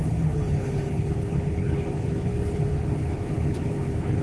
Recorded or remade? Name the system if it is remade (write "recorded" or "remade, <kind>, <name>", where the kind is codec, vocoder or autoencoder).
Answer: remade, codec, HILCodec